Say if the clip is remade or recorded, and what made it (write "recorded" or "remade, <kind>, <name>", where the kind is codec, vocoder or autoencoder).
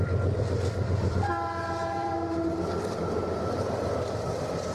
remade, vocoder, BigVGAN v2